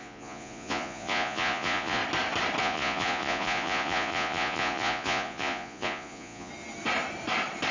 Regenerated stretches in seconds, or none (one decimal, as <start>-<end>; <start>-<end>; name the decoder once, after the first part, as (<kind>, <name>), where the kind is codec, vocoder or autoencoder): 0.0-2.0 (vocoder, Vocos); 2.6-6.5